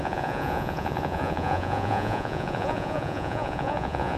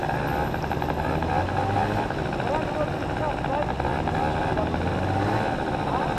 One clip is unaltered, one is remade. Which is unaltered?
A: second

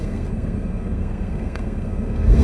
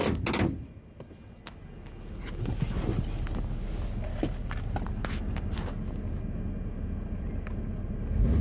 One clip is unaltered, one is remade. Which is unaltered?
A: second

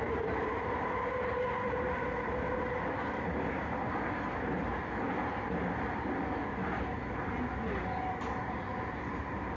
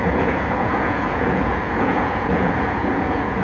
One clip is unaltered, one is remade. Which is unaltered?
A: first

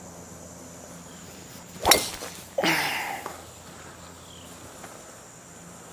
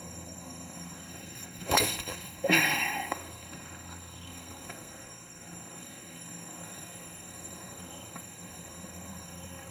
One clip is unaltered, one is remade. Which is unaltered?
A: first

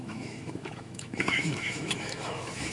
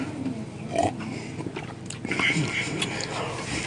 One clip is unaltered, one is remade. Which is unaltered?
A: second